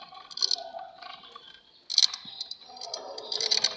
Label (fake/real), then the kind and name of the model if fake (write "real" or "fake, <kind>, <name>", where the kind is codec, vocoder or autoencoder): real